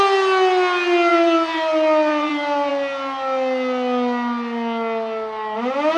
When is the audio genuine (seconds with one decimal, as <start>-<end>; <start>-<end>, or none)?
0.0-1.1; 2.7-6.0